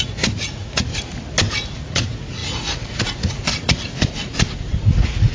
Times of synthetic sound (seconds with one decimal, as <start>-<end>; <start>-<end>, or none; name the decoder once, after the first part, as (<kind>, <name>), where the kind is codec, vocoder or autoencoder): 0.0-0.9 (vocoder, Vocos); 1.5-5.3